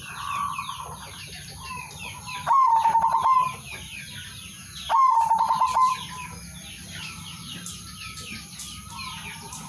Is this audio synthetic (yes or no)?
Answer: no